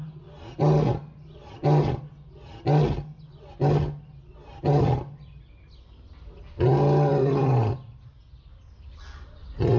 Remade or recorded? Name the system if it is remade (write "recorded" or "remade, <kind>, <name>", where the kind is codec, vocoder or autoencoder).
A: recorded